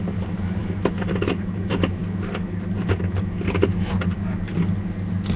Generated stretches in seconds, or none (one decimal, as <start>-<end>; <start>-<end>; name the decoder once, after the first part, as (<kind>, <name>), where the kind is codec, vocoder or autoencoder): none

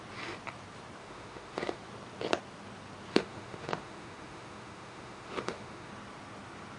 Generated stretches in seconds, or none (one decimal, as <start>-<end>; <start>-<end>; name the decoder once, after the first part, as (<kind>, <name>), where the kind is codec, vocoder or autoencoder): 1.0-1.8 (autoencoder, DAC-VAE); 3.1-5.9

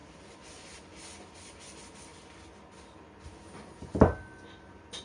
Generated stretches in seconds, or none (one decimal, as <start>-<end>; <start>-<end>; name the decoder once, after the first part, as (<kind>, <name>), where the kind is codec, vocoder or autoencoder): none

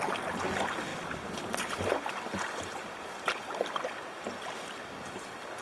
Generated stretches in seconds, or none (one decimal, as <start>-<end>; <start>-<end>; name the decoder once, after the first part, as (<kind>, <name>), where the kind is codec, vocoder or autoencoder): 0.9-3.2 (vocoder, BigVGAN v2)

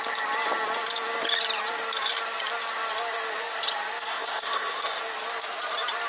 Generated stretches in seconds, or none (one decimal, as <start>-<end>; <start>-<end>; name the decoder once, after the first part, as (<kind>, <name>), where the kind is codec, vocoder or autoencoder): 4.1-5.0 (codec, SNAC)